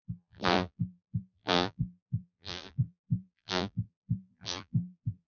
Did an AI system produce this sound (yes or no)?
yes